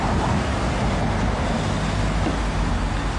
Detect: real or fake real